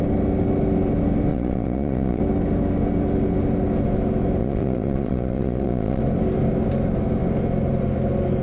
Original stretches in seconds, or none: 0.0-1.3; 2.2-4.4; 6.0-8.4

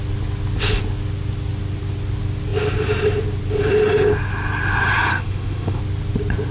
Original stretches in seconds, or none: 0.0-5.1; 5.8-6.5